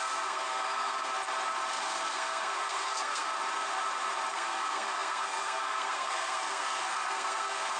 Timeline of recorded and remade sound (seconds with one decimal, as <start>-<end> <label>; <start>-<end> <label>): 0.0-1.1 remade; 1.1-1.7 recorded; 1.7-3.3 remade; 3.3-4.3 recorded; 4.3-7.8 remade